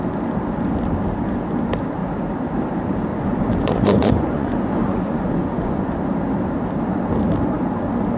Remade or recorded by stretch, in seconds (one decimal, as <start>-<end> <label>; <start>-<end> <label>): 0.0-3.1 recorded; 3.1-5.9 remade; 5.9-8.2 recorded